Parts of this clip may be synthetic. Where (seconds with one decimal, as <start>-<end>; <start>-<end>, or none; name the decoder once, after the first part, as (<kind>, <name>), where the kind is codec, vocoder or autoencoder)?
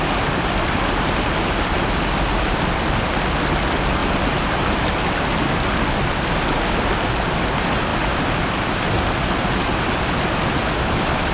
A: none